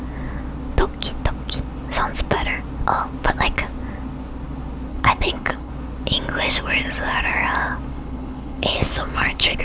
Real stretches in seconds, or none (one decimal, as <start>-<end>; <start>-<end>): 0.0-4.9; 5.7-7.9

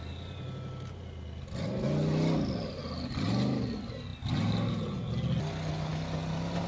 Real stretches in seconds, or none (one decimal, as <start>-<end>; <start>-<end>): 0.0-6.7

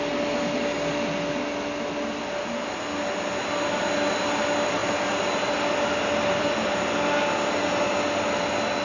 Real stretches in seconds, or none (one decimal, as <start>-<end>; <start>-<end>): 0.0-8.8

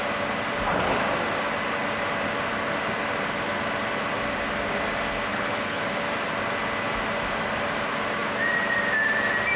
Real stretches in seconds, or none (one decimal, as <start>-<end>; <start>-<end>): 0.0-5.3; 5.8-9.6